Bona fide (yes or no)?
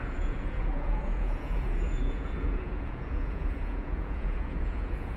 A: no